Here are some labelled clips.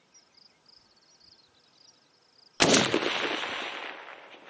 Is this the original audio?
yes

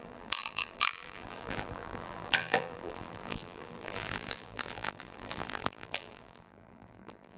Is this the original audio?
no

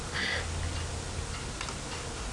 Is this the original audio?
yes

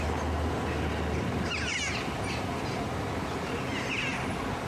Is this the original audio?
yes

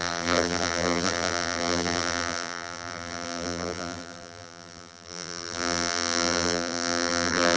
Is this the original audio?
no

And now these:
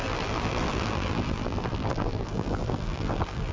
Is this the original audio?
no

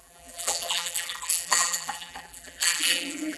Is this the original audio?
no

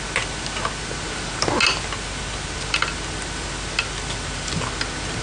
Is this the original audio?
yes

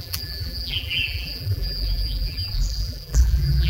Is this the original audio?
no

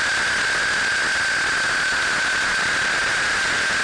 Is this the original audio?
yes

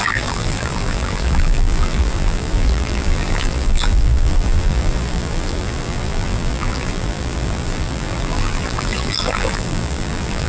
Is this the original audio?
no